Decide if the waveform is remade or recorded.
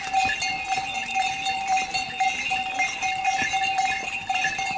recorded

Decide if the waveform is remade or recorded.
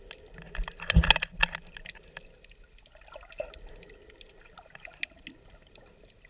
recorded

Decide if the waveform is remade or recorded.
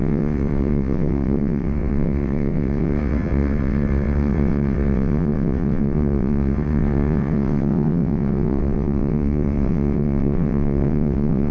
remade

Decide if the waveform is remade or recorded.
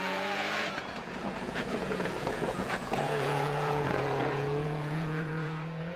remade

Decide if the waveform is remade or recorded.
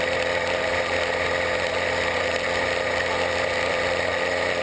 recorded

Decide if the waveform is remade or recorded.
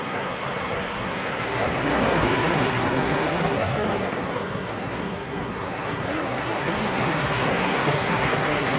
remade